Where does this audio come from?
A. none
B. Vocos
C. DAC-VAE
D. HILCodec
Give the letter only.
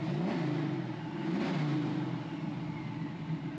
A